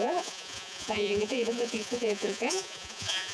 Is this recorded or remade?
remade